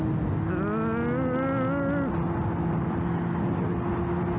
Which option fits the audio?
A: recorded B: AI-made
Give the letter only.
A